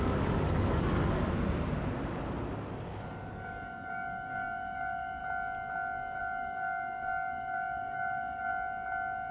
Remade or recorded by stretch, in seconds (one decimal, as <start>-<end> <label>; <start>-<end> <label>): 0.0-1.0 remade; 1.0-3.3 recorded; 3.3-5.2 remade; 5.2-6.2 recorded; 6.2-8.5 remade; 8.5-9.3 recorded